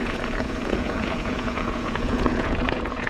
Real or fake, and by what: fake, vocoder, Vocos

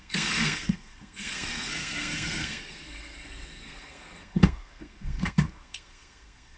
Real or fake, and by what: fake, codec, SNAC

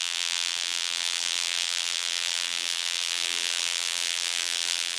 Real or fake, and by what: fake, vocoder, BigVGAN v2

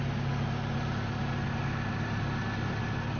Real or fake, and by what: real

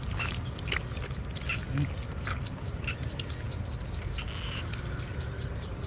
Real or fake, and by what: real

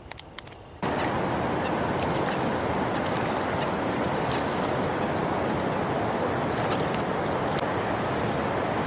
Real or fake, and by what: real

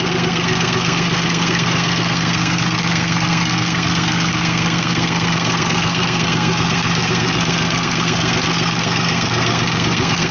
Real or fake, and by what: fake, codec, SNAC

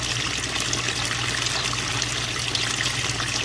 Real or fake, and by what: real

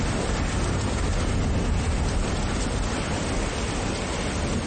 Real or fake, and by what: real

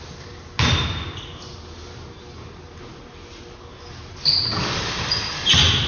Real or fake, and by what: real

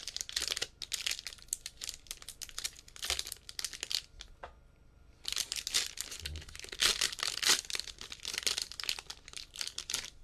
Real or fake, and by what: real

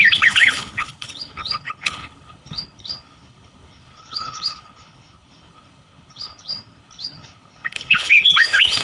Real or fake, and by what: fake, codec, HILCodec